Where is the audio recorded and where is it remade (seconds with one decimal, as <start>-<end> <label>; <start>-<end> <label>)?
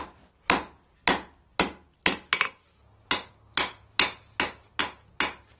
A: 0.0-5.6 recorded